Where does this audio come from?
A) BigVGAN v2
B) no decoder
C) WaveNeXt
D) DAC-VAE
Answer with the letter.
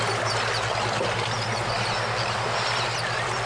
B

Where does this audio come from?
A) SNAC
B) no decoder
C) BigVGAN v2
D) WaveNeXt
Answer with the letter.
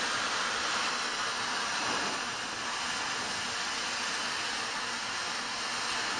B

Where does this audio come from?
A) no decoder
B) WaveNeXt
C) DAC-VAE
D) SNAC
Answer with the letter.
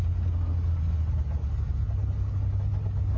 A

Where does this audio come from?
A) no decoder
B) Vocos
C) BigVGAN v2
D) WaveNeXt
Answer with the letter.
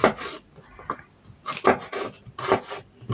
A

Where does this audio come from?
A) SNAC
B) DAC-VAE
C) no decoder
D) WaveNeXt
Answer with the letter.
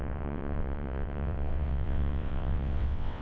D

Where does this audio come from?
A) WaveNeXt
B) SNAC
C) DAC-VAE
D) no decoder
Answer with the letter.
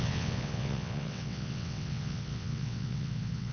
A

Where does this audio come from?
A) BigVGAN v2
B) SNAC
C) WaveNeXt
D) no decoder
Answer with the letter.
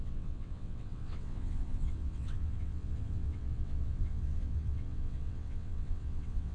C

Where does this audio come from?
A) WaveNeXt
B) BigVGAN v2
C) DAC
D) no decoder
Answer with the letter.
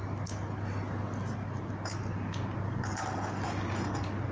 D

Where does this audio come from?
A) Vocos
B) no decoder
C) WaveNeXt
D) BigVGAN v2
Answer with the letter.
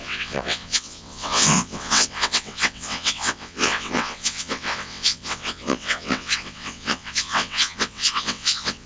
C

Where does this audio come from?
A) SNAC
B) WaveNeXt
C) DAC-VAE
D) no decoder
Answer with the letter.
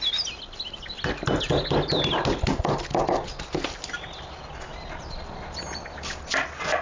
D